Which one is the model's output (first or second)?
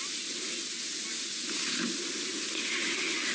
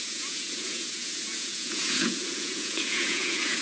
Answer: second